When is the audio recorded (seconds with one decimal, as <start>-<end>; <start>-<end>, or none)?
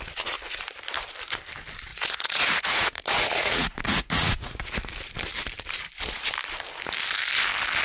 0.0-1.9; 4.7-7.8